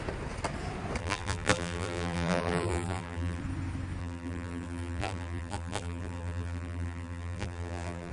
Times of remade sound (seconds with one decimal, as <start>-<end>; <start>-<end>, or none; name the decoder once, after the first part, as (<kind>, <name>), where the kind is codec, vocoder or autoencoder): 1.0-3.4 (vocoder, BigVGAN v2); 4.0-8.1